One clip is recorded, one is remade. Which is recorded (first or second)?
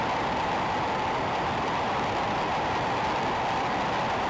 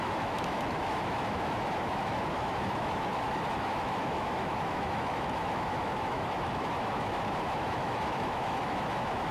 first